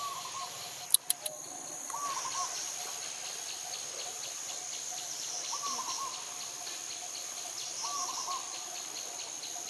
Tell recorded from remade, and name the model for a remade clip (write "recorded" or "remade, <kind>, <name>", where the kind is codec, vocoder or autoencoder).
recorded